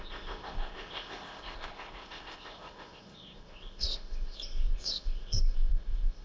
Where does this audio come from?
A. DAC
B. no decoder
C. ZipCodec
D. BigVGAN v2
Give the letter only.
C